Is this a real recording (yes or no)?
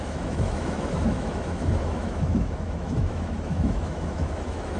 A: no